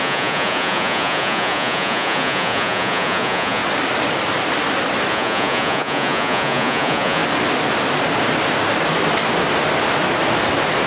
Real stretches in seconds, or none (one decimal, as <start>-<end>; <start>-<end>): 3.6-5.1; 7.2-10.9